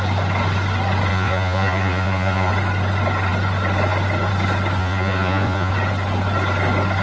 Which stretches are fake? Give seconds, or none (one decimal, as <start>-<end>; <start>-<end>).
1.1-2.5; 4.8-5.7